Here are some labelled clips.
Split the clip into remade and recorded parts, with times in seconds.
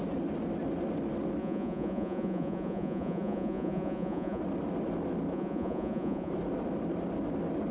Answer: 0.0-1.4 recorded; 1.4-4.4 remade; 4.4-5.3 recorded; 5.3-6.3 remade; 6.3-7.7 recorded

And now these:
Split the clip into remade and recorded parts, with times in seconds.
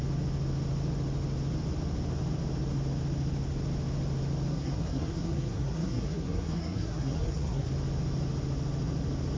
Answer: 0.0-4.5 recorded; 4.5-7.7 remade; 7.7-9.4 recorded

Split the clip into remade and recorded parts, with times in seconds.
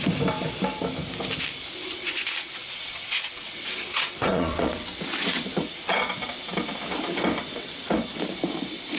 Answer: 0.0-2.0 recorded; 2.0-6.1 remade; 6.1-7.5 recorded; 7.5-8.2 remade; 8.2-9.0 recorded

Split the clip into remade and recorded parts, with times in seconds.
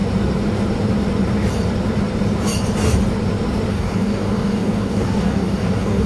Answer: 0.0-3.7 recorded; 3.7-6.1 remade